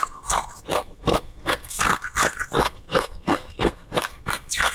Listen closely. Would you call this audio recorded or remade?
remade